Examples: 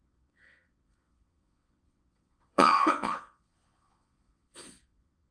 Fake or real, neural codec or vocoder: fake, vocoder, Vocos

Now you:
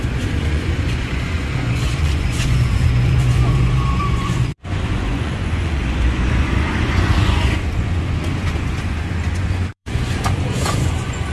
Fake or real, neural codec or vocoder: fake, vocoder, Vocos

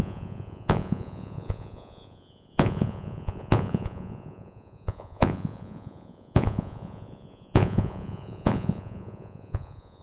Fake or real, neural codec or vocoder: fake, vocoder, Vocos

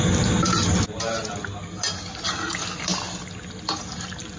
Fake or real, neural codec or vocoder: real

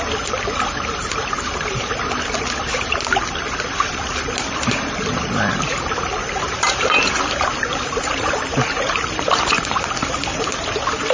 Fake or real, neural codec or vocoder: real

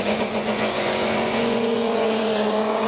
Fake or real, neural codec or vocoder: fake, vocoder, Vocos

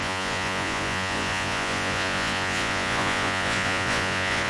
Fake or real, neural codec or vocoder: fake, vocoder, Vocos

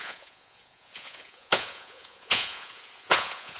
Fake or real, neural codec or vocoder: fake, vocoder, Vocos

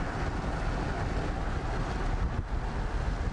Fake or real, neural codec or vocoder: real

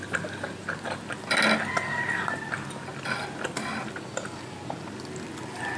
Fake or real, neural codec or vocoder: real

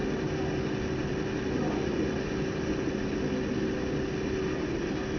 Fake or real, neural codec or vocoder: real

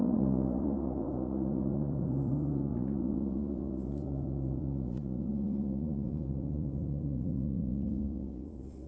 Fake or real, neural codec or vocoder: fake, vocoder, Vocos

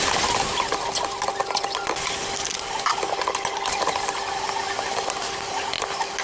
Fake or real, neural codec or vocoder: real